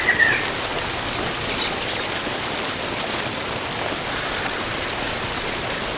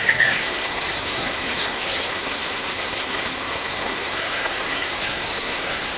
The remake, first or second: second